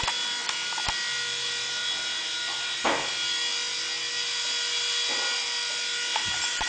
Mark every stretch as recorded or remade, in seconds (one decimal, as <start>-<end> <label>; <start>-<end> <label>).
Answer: 0.0-6.7 recorded